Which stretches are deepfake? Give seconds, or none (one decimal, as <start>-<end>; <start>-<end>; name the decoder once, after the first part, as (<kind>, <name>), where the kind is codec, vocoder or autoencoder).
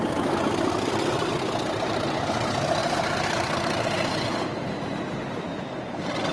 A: 1.6-2.2 (vocoder, BigVGAN v2); 2.8-5.0